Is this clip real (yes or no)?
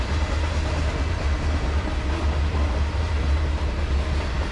yes